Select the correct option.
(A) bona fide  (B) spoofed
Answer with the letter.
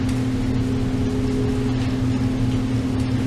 A